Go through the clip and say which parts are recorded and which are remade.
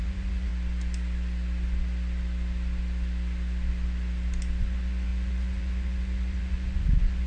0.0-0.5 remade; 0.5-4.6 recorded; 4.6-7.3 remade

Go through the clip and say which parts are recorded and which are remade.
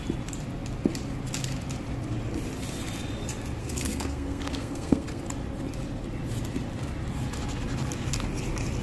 0.0-3.6 recorded; 3.6-5.2 remade; 5.2-8.8 recorded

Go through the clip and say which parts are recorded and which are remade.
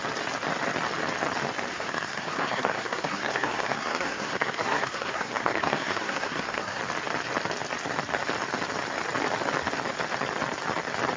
0.0-1.7 recorded; 1.7-6.8 remade; 6.8-11.2 recorded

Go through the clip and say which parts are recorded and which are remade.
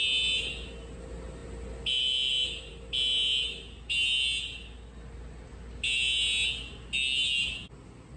0.0-8.2 recorded